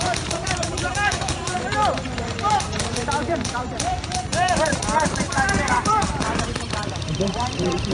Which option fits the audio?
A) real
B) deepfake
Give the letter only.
B